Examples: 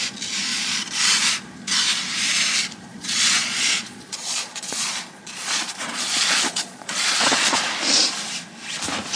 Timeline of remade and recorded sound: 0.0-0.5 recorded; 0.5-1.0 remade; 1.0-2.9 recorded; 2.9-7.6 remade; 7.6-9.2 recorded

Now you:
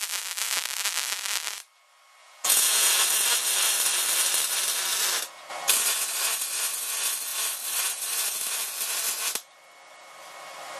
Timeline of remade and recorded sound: 0.0-2.2 recorded; 2.2-2.9 remade; 2.9-10.8 recorded

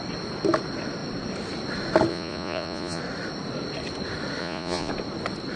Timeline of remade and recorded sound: 0.0-2.1 recorded; 2.1-3.0 remade; 3.0-4.4 recorded; 4.4-4.9 remade; 4.9-5.6 recorded

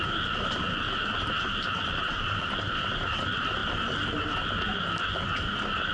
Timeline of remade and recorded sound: 0.0-5.9 recorded

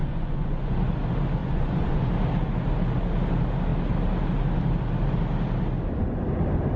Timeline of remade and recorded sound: 0.0-0.8 remade; 0.8-1.4 recorded; 1.4-2.1 remade; 2.1-6.8 recorded

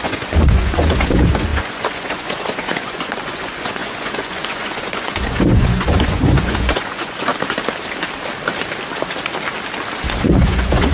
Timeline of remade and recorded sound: 0.0-7.3 remade; 7.3-10.2 recorded; 10.2-10.9 remade

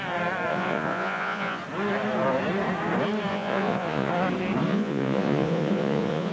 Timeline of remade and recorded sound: 0.0-0.5 recorded; 0.5-1.6 remade; 1.6-3.3 recorded; 3.3-4.1 remade; 4.1-4.7 recorded; 4.7-6.3 remade

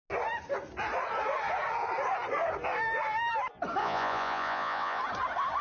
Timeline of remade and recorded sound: 0.0-3.8 recorded; 3.8-5.0 remade; 5.0-5.6 recorded